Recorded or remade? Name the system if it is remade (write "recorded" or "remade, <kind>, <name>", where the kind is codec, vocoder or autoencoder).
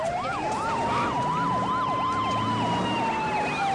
recorded